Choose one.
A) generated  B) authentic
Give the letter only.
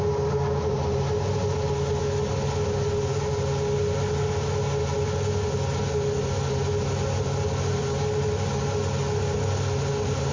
B